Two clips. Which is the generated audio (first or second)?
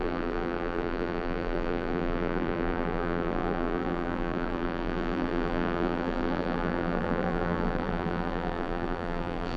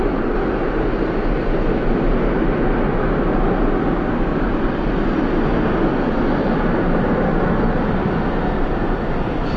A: first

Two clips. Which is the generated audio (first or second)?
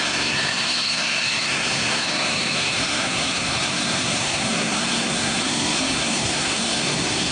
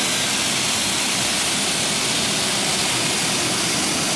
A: first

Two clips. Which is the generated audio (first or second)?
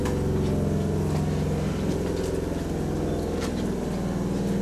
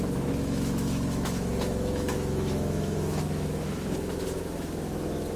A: second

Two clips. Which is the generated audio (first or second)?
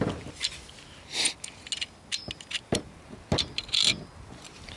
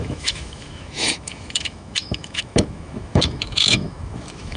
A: second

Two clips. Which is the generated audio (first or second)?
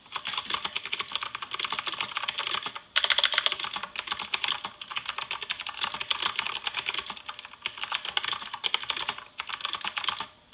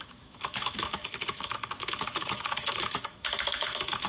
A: second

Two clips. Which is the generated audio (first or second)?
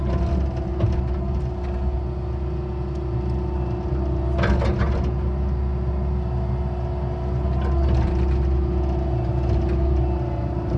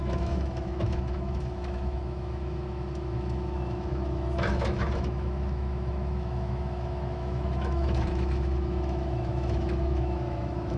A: second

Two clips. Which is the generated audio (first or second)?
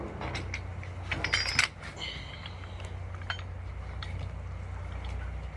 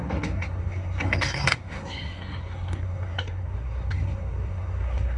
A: second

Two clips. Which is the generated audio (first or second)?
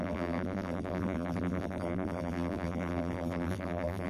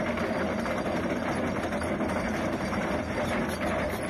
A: first